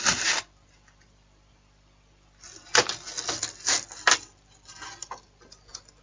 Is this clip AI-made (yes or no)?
no